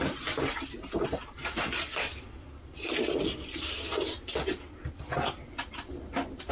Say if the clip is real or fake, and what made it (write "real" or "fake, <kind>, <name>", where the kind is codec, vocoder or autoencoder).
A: real